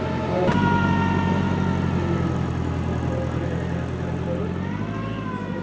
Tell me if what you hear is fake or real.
real